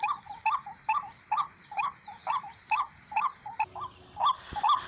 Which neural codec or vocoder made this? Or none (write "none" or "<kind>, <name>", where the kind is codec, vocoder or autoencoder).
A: none